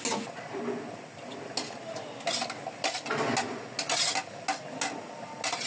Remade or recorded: recorded